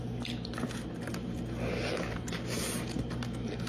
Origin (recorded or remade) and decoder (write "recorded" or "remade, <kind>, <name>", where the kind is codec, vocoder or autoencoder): recorded